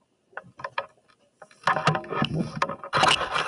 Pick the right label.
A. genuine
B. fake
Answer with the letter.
A